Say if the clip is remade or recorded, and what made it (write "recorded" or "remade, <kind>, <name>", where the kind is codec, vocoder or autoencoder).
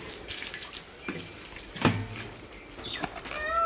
recorded